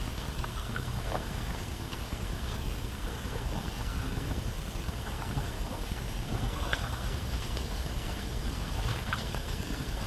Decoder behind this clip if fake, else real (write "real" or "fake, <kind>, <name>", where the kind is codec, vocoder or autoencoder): fake, codec, SNAC